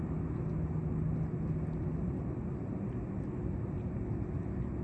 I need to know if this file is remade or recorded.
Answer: recorded